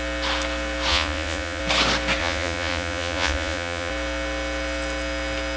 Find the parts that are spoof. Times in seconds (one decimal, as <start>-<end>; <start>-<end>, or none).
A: 0.9-1.6; 2.2-3.9